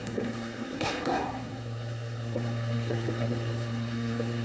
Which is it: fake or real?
fake